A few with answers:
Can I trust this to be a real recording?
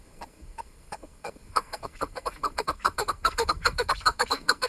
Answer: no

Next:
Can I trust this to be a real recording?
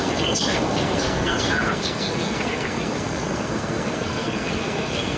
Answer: no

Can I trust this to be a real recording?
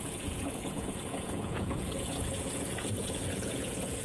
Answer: no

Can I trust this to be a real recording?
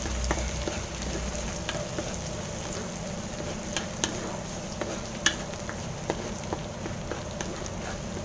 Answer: no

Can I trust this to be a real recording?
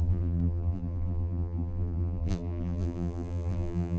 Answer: no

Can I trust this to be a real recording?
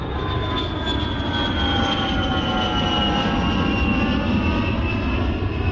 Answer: yes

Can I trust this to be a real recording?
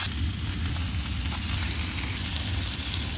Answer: yes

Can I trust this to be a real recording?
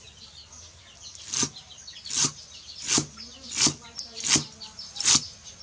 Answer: yes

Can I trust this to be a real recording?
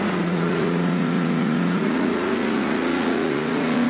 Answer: no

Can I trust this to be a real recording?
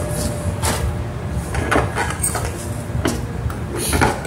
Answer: yes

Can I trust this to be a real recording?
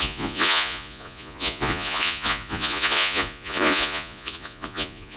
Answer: no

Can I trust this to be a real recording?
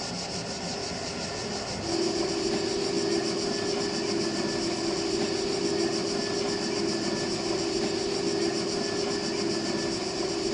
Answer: yes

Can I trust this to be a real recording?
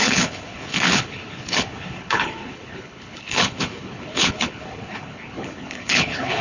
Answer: no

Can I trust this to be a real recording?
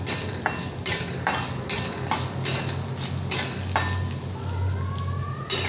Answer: yes